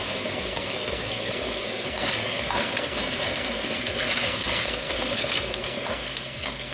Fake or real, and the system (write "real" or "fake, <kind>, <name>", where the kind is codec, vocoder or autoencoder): fake, codec, SNAC